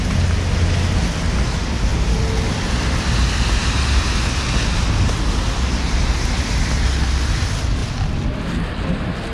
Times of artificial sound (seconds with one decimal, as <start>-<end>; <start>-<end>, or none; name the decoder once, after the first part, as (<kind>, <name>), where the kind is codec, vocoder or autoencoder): 1.9-2.7 (vocoder, BigVGAN v2); 7.8-8.4